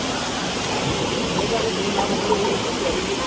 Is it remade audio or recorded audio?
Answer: recorded